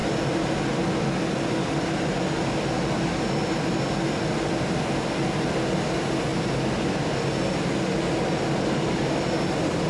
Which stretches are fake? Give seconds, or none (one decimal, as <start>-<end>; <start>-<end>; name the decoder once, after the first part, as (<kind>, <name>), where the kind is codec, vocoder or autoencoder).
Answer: none